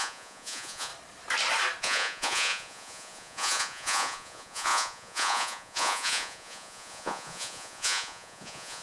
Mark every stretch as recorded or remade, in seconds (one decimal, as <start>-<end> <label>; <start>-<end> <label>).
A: 0.0-0.9 remade; 0.9-1.8 recorded; 1.8-8.8 remade